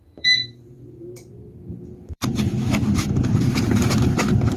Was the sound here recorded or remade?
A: remade